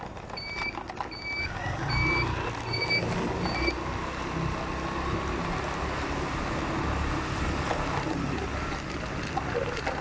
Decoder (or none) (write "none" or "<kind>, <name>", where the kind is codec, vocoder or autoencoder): none